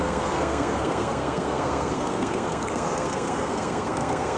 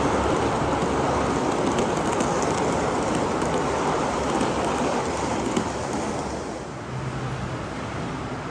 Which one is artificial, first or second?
first